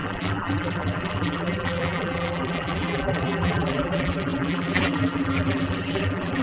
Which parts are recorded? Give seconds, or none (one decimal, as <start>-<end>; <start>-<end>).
none